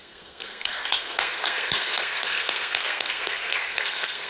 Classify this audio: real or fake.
fake